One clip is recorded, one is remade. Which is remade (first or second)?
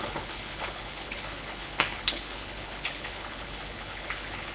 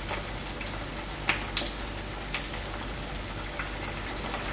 first